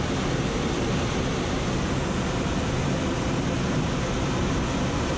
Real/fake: real